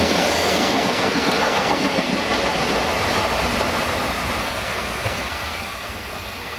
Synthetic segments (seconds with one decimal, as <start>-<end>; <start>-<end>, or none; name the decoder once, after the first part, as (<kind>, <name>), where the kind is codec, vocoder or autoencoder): 0.0-2.1 (codec, SNAC); 4.4-6.6